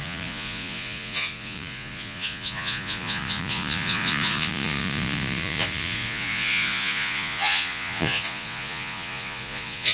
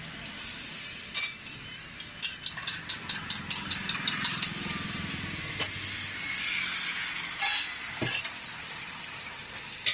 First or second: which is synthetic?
first